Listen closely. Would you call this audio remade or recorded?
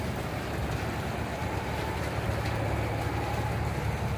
recorded